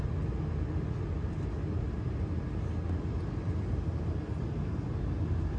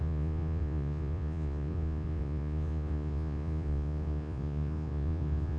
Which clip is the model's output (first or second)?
second